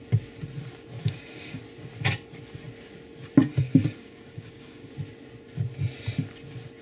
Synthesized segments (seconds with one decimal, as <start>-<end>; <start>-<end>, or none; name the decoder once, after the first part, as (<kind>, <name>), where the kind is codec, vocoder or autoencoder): 1.0-1.6 (codec, DAC); 3.4-4.9